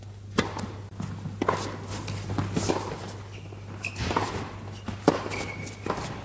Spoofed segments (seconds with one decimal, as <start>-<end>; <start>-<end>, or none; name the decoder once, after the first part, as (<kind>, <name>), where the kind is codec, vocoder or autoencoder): none